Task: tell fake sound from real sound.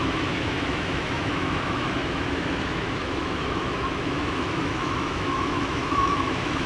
fake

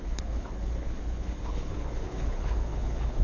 fake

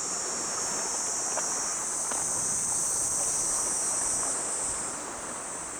real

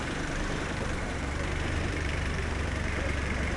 fake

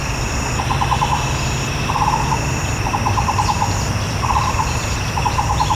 fake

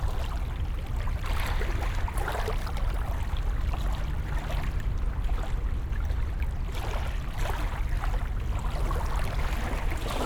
real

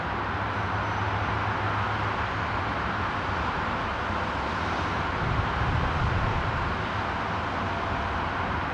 real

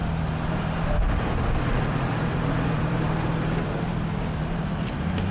real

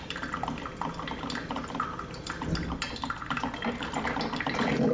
real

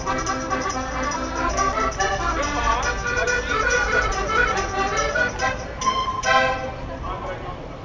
real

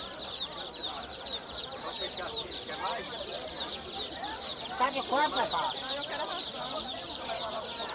fake